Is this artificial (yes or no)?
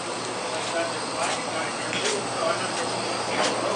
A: no